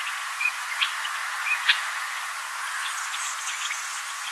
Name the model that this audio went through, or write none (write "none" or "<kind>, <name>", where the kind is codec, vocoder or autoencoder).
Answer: vocoder, Vocos